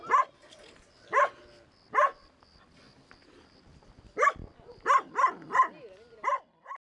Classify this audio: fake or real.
real